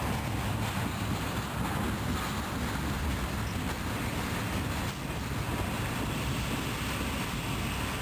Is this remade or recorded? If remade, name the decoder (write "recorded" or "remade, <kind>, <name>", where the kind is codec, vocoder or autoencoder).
recorded